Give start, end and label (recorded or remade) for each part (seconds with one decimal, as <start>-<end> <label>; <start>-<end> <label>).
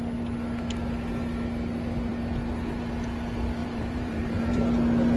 0.0-3.6 recorded; 3.6-4.6 remade; 4.6-5.2 recorded